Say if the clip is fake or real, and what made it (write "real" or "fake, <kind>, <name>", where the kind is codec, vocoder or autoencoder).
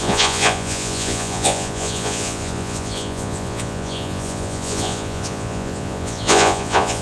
fake, vocoder, Vocos